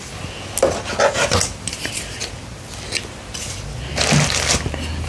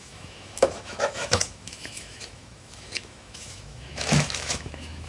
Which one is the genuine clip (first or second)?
first